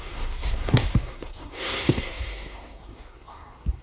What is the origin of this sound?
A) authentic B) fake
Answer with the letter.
B